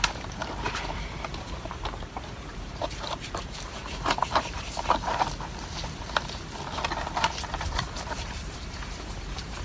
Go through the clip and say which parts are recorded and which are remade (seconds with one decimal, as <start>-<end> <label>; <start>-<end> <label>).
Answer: 0.0-4.2 remade; 4.2-7.6 recorded; 7.6-9.6 remade